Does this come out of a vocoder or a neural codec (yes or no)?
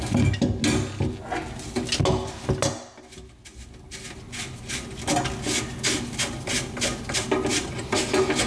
no